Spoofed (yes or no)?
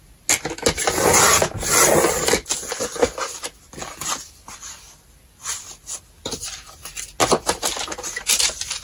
no